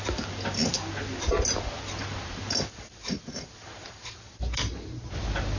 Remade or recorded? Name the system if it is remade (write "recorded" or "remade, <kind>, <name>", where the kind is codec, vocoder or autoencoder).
recorded